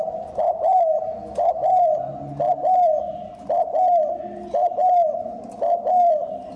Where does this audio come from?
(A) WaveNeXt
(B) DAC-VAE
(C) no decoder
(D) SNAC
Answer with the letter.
C